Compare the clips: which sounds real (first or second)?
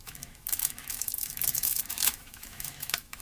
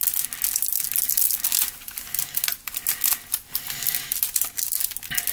second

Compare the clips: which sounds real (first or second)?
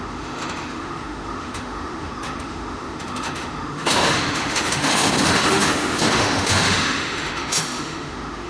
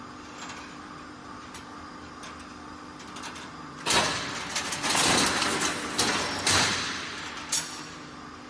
second